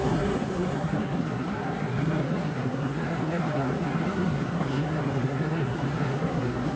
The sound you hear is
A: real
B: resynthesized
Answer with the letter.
B